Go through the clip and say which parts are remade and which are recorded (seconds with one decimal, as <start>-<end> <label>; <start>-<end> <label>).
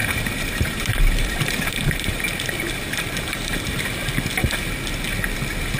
0.0-2.2 remade; 2.2-5.8 recorded